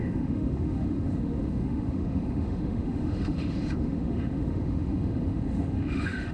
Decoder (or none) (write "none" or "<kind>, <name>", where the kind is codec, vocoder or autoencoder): autoencoder, DAC-VAE